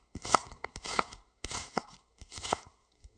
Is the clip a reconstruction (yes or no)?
yes